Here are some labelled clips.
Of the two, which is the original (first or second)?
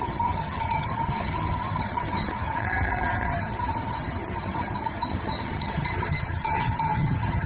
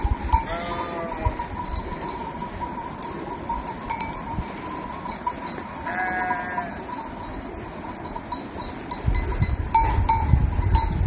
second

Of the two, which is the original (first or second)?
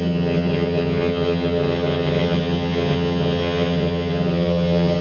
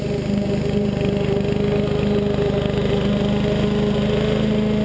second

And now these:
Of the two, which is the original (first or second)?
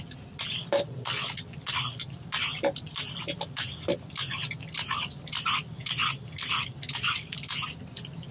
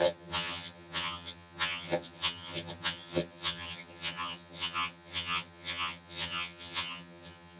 first